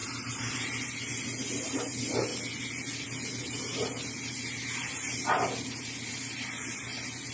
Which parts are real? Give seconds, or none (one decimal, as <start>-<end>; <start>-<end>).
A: 0.0-7.3